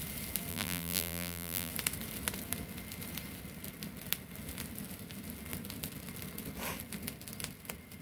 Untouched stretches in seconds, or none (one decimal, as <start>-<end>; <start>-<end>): 0.0-0.5; 1.7-8.0